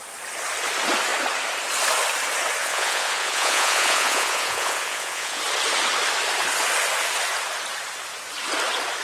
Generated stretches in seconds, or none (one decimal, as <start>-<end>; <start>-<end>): 2.6-5.4